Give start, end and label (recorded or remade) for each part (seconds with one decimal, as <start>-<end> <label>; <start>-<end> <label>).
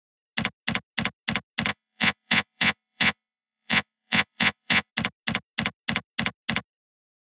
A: 0.0-1.7 recorded; 1.7-4.9 remade; 4.9-7.3 recorded